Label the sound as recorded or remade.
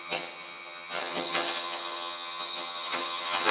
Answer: remade